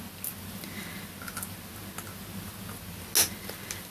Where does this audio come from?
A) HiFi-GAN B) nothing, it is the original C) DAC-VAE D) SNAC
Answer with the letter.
B